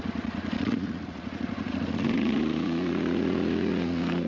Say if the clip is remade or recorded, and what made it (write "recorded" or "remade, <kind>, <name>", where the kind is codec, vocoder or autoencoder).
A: remade, vocoder, Vocos